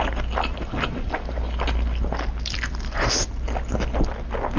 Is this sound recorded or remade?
recorded